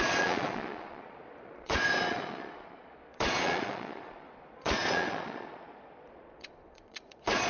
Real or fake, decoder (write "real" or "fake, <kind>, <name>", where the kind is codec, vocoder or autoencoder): fake, vocoder, Vocos